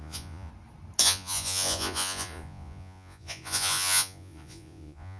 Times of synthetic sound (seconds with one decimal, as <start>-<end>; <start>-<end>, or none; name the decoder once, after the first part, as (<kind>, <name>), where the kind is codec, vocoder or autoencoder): 0.0-0.5 (vocoder, Vocos); 1.0-5.2